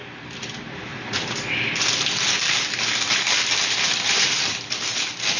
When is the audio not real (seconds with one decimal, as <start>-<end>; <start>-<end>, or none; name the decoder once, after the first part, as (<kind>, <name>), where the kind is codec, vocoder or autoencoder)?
0.0-5.4 (vocoder, BigVGAN v2)